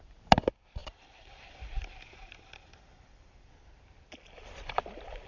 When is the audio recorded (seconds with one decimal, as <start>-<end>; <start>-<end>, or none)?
0.0-0.8; 3.5-5.3